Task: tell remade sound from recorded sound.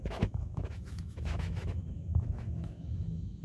remade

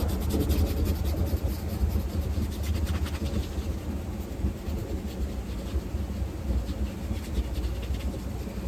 recorded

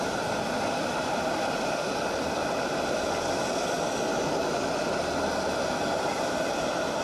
recorded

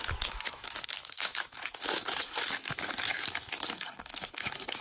remade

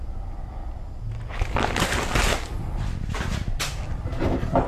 recorded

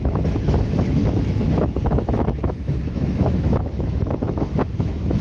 remade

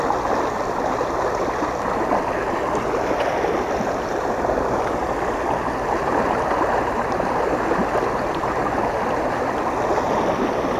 recorded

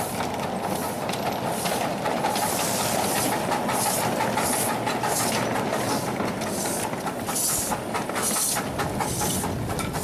recorded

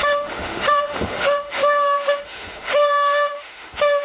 remade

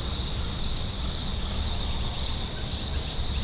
recorded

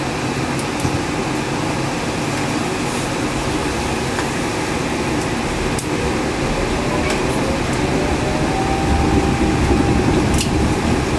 recorded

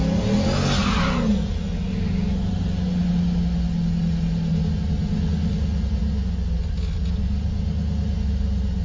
recorded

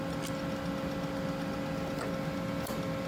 recorded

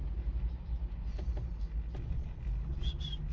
recorded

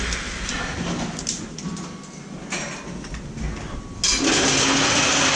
recorded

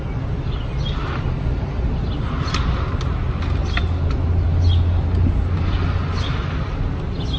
recorded